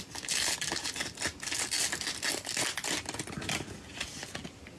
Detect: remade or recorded recorded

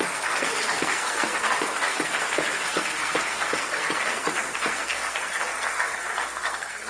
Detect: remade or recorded remade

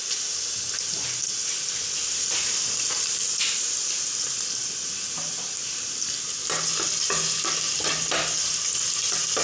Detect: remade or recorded recorded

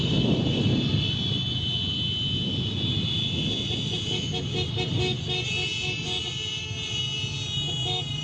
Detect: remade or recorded recorded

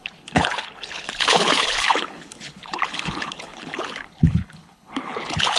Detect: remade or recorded remade